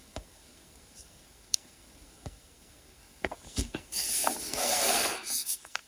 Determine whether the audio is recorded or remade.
remade